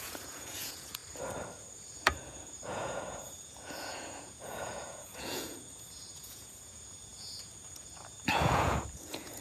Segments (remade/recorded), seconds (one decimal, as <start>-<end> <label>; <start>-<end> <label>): 0.0-1.0 remade; 1.0-1.5 recorded; 1.5-9.4 remade